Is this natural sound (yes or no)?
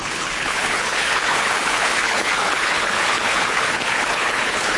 no